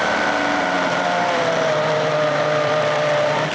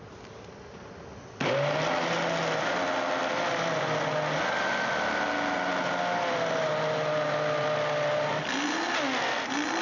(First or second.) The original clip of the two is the second